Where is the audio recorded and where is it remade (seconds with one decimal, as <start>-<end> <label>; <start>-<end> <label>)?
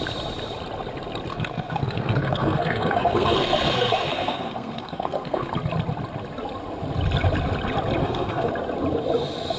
0.0-1.3 recorded; 1.3-5.5 remade; 5.5-8.0 recorded; 8.0-8.5 remade; 8.5-9.6 recorded